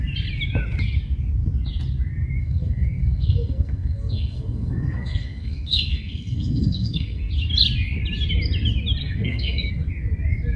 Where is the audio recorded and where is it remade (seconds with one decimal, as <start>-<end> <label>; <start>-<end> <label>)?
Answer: 0.0-2.4 recorded; 2.4-7.3 remade; 7.3-9.0 recorded; 9.0-9.7 remade; 9.7-10.6 recorded